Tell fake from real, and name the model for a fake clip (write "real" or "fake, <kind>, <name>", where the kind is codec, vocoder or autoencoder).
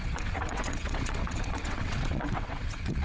fake, vocoder, WaveNeXt